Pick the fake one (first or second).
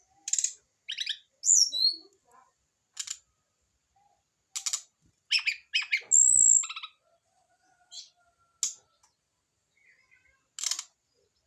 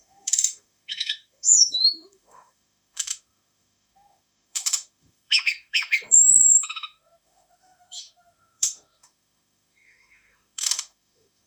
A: second